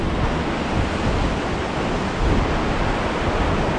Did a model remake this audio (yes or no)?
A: no